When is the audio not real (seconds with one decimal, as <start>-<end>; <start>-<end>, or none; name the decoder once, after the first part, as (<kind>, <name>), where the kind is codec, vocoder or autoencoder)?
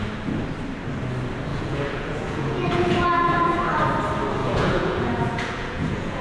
1.5-3.7 (vocoder, Vocos); 4.4-6.2